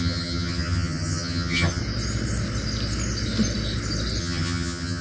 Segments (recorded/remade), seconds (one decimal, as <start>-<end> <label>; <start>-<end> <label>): 0.0-1.8 remade; 1.8-4.2 recorded; 4.2-5.0 remade